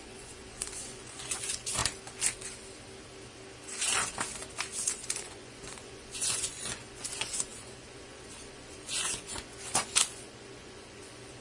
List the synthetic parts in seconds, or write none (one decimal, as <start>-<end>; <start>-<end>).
0.0-1.8; 4.9-11.4